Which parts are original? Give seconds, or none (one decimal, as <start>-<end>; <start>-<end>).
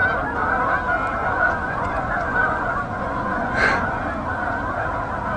0.0-1.2; 4.0-5.4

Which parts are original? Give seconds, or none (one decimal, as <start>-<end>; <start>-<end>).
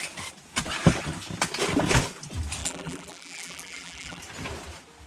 0.0-2.6; 4.2-5.1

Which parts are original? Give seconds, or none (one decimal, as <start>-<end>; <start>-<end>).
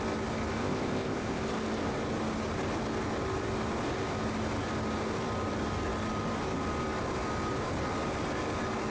0.0-0.6; 1.4-8.9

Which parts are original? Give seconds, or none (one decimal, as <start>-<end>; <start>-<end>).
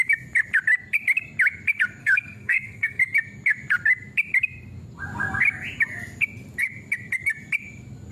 0.0-2.0; 3.0-8.1